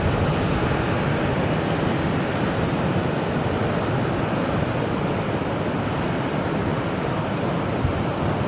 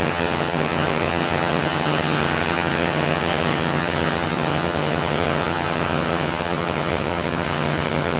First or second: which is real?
first